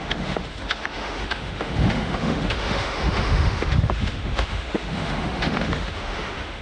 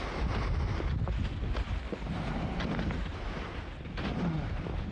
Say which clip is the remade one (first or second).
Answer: first